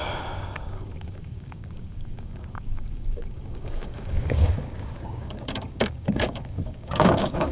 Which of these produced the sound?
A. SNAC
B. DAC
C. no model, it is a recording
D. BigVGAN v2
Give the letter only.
B